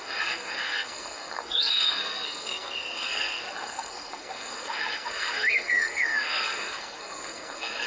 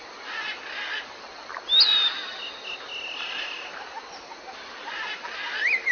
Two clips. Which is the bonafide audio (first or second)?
second